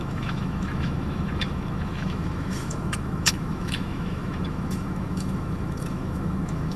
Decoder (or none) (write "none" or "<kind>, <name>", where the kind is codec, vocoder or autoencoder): autoencoder, DAC-VAE